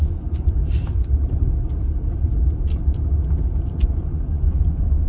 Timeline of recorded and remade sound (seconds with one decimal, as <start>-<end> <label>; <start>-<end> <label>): 0.0-0.6 remade; 0.6-3.7 recorded; 3.7-5.1 remade